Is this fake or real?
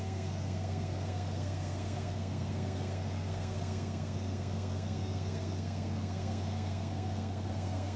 fake